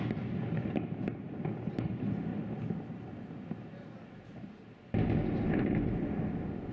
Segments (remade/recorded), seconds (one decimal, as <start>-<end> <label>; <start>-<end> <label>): 0.0-1.1 recorded; 1.1-1.7 remade; 1.7-2.3 recorded; 2.3-2.8 remade; 2.8-6.7 recorded